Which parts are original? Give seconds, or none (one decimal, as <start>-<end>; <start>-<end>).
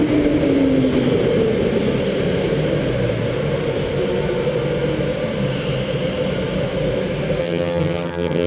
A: 0.0-7.4